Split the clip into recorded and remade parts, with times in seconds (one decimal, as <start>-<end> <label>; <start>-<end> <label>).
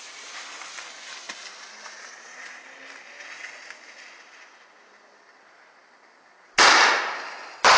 0.0-7.8 recorded